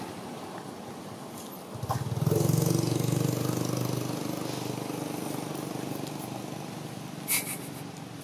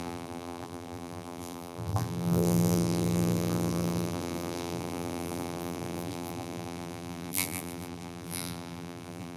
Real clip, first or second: first